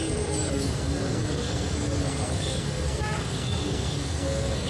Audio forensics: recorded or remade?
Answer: remade